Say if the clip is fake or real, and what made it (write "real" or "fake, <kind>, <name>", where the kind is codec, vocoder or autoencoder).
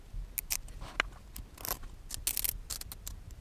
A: real